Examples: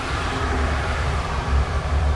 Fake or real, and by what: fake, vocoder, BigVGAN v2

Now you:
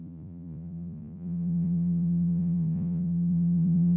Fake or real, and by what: fake, vocoder, Vocos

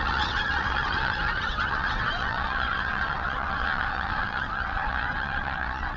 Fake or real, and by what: fake, vocoder, WaveNeXt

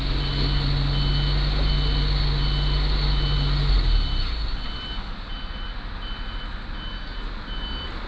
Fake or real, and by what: real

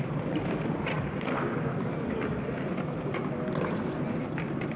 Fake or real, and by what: real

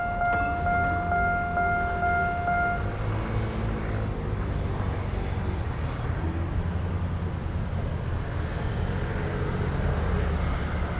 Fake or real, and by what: real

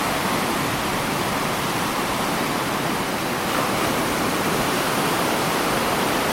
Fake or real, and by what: fake, vocoder, BigVGAN v2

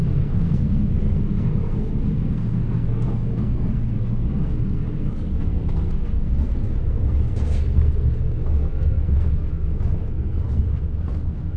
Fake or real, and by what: fake, codec, SNAC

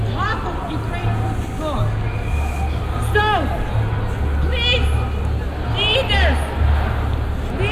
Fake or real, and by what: real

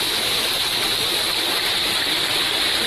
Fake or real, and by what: real